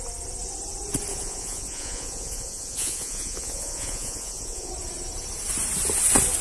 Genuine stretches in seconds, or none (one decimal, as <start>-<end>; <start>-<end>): 0.0-1.1; 4.7-6.4